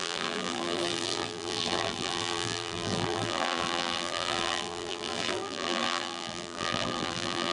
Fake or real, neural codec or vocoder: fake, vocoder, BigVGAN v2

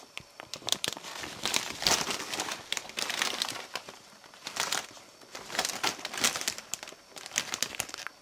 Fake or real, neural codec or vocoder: fake, vocoder, BigVGAN v2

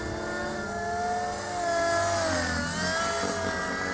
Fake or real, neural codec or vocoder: real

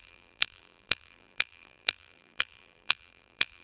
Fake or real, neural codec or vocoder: fake, vocoder, BigVGAN v2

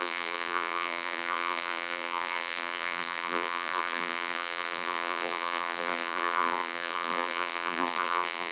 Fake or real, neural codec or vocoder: fake, vocoder, BigVGAN v2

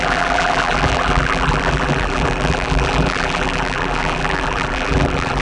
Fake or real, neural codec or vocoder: fake, vocoder, BigVGAN v2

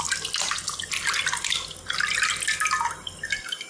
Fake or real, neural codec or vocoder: real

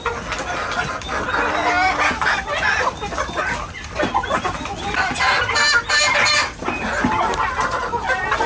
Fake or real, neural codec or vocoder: real